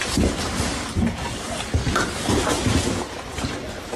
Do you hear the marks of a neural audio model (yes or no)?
no